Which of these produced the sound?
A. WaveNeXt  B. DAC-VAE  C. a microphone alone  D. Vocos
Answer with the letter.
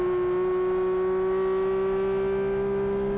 C